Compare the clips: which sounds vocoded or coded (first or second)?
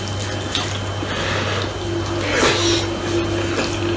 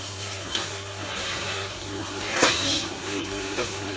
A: second